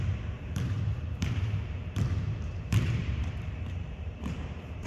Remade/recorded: remade